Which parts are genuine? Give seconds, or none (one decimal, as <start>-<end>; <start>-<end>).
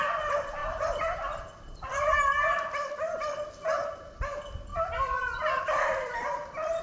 0.6-1.4